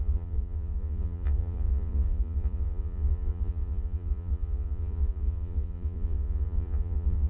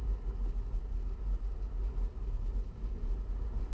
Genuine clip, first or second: second